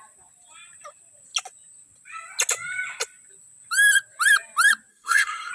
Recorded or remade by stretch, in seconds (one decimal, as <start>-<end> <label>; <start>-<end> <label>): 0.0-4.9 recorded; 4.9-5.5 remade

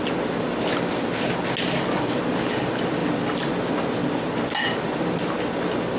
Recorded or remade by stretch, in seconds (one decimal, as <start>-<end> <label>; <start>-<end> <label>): 0.0-6.0 recorded

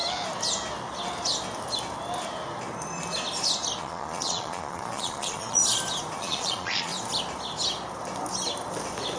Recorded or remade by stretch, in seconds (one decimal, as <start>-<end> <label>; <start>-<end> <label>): 0.0-3.8 recorded; 3.8-5.6 remade; 5.6-6.2 recorded; 6.2-6.9 remade; 6.9-9.2 recorded

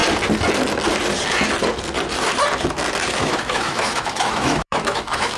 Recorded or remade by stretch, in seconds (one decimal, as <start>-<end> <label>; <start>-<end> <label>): 0.0-3.2 recorded; 3.2-5.4 remade